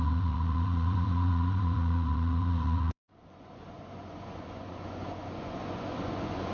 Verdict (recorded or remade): remade